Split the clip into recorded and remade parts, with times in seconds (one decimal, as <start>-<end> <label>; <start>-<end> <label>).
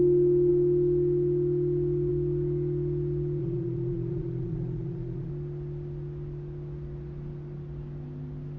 0.0-3.4 recorded; 3.4-5.3 remade; 5.3-8.6 recorded